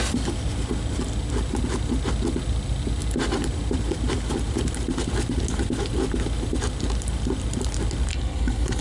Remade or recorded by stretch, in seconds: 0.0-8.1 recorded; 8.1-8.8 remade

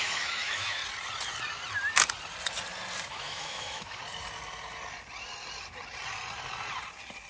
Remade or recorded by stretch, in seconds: 0.0-0.8 remade; 0.8-3.1 recorded; 3.1-4.0 remade; 4.0-7.3 recorded